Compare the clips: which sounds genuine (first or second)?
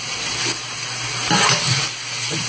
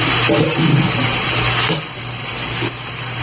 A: first